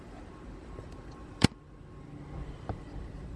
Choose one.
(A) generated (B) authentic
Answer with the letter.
A